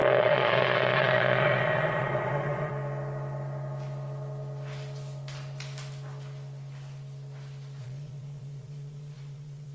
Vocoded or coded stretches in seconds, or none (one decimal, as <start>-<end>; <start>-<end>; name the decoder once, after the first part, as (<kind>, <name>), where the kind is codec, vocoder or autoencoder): 0.0-2.7 (vocoder, Vocos); 7.8-9.7